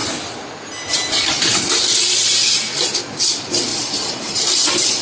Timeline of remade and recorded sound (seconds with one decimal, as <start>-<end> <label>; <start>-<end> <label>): 0.0-5.0 recorded